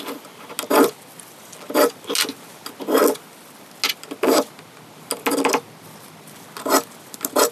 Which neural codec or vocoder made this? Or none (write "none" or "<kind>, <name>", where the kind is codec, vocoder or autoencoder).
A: none